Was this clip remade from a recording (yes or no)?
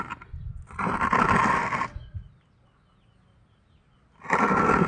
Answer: no